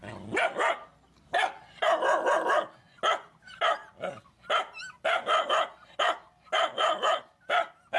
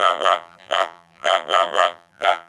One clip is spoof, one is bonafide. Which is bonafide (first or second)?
first